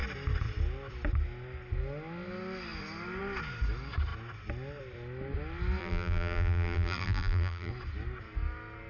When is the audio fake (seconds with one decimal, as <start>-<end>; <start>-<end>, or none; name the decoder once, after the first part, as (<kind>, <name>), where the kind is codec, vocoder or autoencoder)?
5.8-7.7 (vocoder, BigVGAN v2)